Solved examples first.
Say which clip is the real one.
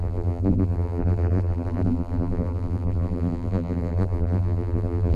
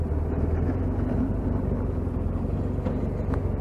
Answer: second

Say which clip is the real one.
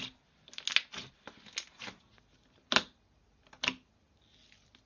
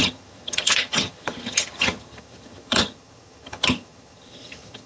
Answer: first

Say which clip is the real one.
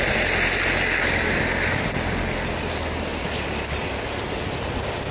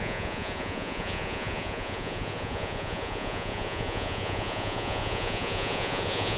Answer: first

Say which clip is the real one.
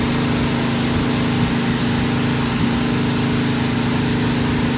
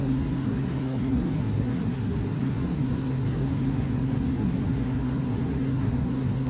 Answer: first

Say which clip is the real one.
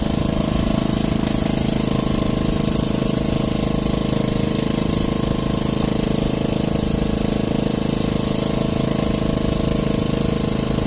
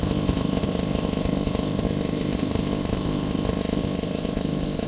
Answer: first